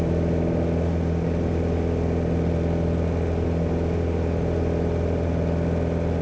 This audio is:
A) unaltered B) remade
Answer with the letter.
A